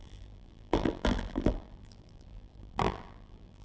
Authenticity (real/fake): fake